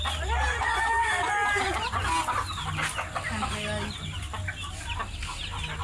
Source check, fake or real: real